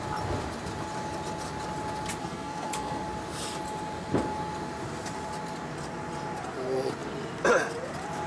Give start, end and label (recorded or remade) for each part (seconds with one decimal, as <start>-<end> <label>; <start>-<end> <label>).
0.0-2.2 recorded; 2.2-3.0 remade; 3.0-8.3 recorded